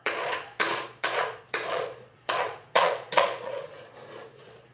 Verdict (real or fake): fake